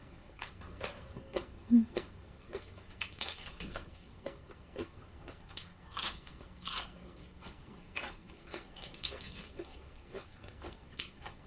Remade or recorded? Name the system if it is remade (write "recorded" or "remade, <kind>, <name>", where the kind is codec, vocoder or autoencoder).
remade, codec, SNAC